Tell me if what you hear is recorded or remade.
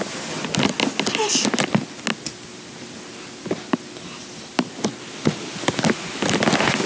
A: recorded